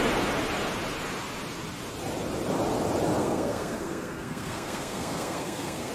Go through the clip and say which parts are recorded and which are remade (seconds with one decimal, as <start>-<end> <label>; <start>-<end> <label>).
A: 0.0-3.2 recorded; 3.2-5.9 remade